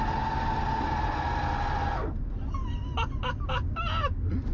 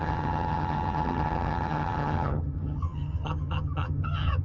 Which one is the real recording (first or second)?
first